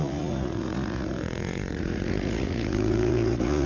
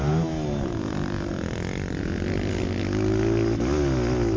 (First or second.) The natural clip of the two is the second